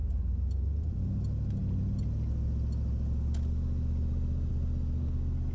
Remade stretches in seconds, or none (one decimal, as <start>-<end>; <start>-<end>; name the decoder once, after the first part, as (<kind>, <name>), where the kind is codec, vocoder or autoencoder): none